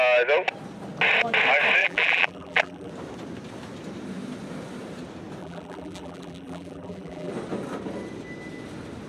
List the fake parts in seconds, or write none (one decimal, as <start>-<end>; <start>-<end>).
1.8-2.9; 5.4-7.3